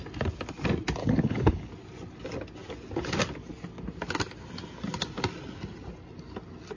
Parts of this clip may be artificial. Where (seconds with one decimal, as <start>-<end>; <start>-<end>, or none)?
1.0-1.7

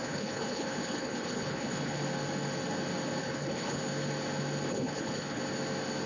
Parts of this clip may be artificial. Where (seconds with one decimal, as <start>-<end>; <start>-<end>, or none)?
0.0-2.0; 3.2-3.8; 4.7-5.4

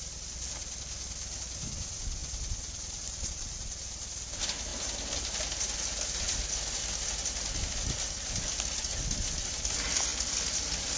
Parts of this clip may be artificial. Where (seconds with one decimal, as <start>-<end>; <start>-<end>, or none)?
none

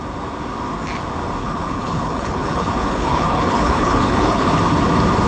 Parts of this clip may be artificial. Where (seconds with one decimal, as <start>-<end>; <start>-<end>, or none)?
1.4-4.6

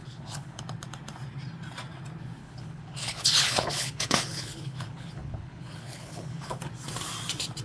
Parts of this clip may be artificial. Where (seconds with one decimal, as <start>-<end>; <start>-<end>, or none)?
0.0-0.6; 2.4-6.6

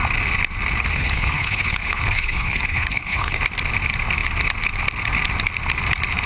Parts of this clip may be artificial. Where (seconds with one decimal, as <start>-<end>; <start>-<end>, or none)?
0.9-3.4